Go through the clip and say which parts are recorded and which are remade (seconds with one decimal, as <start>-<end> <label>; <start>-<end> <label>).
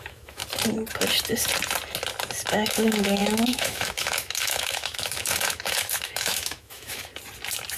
0.0-0.4 remade; 0.4-2.5 recorded; 2.5-7.1 remade; 7.1-7.8 recorded